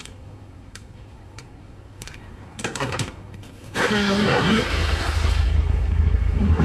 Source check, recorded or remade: remade